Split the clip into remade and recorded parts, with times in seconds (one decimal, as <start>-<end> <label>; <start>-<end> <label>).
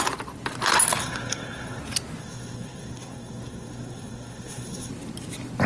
0.0-1.0 recorded; 1.0-1.8 remade; 1.8-2.2 recorded; 2.2-4.9 remade; 4.9-5.7 recorded